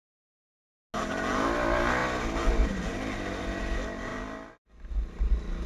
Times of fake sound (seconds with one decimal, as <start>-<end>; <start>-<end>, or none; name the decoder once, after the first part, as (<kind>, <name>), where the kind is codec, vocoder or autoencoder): none